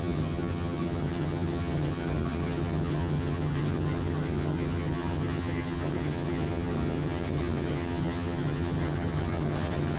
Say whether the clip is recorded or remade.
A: remade